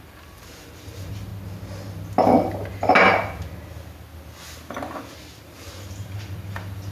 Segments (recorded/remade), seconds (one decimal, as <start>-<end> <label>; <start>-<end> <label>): 0.0-1.3 remade; 1.3-5.4 recorded; 5.4-6.9 remade